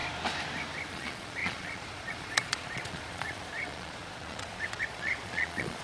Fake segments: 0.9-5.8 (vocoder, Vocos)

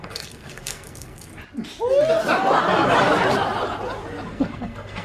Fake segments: 0.0-1.3 (codec, SNAC); 4.3-5.0

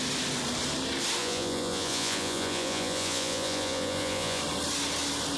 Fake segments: 1.2-4.4 (vocoder, Vocos)

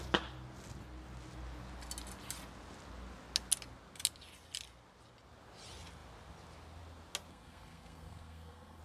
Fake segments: 7.3-8.8 (codec, SNAC)

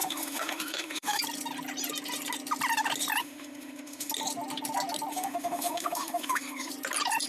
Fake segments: 0.0-1.2 (autoencoder, DAC-VAE); 3.2-4.1; 5.1-6.7

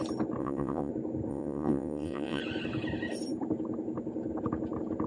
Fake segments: 0.4-0.9 (vocoder, WaveNeXt); 1.3-2.4

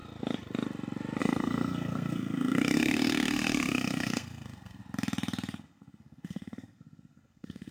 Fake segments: 1.2-4.8 (codec, SNAC); 5.6-7.7